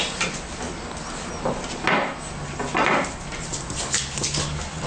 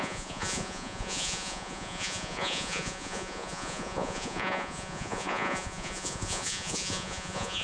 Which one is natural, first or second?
first